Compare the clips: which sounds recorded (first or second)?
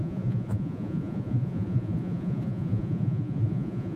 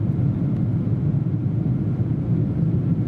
second